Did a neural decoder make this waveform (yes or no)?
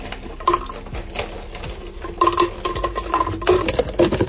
no